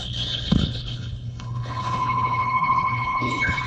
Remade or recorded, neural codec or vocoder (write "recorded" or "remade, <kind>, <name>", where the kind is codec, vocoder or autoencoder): remade, codec, HILCodec